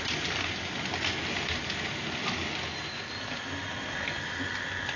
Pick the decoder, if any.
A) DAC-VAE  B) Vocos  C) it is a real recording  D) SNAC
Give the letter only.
C